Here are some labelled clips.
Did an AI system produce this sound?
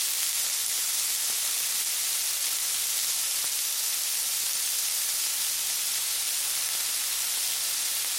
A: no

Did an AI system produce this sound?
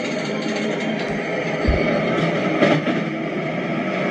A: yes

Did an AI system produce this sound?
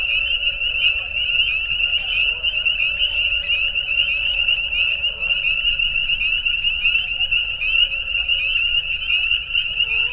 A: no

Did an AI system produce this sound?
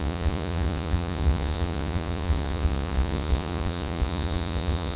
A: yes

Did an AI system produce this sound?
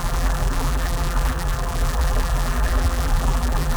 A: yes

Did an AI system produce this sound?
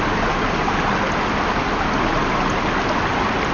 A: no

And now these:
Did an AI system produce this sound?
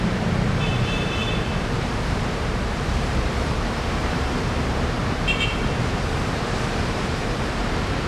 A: yes